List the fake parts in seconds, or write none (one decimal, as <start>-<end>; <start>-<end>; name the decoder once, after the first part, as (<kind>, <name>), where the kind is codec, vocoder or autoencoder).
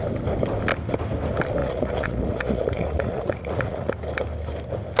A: 1.6-3.9 (vocoder, Vocos)